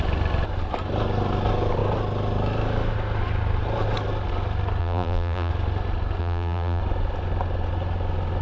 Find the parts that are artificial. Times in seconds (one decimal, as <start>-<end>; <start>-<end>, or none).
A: 4.8-5.5; 6.2-6.8